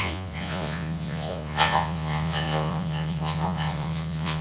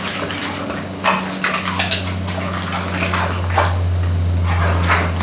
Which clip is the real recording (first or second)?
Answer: second